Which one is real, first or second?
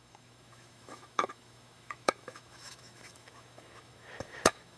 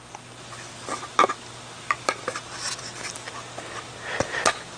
second